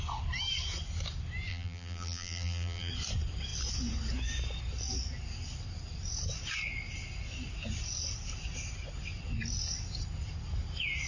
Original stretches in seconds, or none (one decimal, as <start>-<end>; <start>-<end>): 0.0-1.5; 2.9-11.1